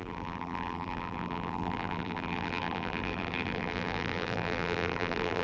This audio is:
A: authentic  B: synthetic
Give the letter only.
B